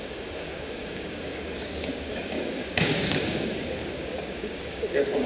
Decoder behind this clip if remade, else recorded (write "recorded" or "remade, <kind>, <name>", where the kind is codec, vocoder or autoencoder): remade, codec, DAC